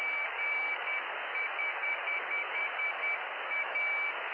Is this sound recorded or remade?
remade